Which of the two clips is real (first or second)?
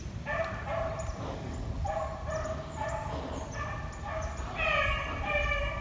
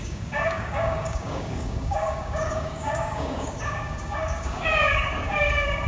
first